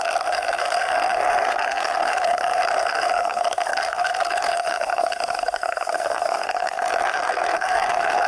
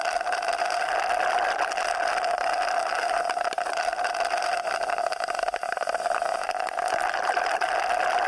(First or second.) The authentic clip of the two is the second